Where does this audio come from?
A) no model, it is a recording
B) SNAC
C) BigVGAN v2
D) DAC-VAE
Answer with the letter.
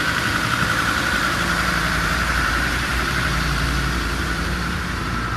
C